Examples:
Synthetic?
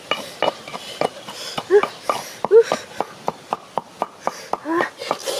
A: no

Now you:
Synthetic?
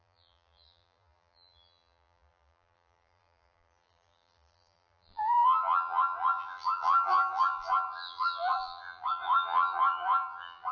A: yes